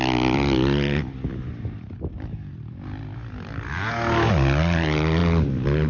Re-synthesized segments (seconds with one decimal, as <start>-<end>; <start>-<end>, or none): none